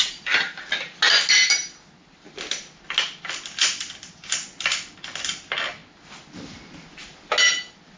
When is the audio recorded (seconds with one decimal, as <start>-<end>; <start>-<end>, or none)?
0.0-8.0